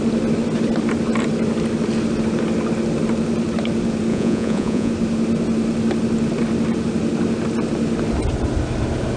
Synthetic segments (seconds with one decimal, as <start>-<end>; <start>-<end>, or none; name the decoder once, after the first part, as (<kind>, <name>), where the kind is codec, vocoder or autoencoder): 4.1-4.9 (vocoder, Vocos)

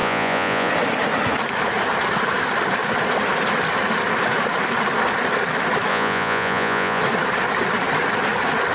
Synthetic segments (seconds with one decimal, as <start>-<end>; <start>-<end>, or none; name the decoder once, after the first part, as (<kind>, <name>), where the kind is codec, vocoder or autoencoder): 0.0-0.7 (vocoder, Vocos); 5.9-7.0

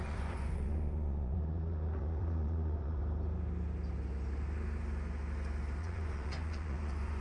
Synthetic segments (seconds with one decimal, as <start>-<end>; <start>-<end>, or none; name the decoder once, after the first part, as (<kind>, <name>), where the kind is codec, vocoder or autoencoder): 0.0-3.0 (vocoder, Vocos); 5.8-7.2

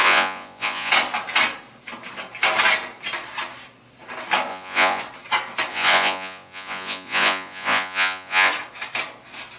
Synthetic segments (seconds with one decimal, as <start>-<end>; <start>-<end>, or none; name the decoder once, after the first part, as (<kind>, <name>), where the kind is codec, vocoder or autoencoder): 0.0-0.9 (vocoder, Vocos); 4.5-5.0; 5.7-8.5

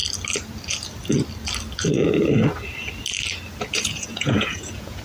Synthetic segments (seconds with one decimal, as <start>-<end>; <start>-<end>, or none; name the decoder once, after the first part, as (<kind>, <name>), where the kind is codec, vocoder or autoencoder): 3.7-5.0 (vocoder, Vocos)

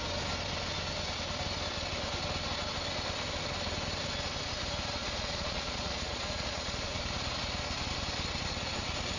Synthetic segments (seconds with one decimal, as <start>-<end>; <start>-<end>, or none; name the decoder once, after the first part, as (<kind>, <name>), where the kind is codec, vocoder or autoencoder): 5.0-7.0 (vocoder, Vocos)

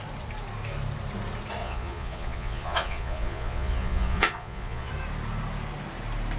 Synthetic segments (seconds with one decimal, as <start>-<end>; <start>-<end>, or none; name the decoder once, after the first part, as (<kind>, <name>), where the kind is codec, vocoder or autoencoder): 1.6-4.9 (vocoder, Vocos)